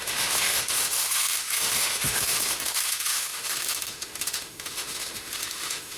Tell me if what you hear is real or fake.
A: fake